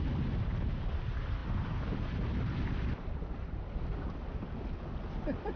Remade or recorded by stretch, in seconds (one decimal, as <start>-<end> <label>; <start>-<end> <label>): 0.0-5.6 recorded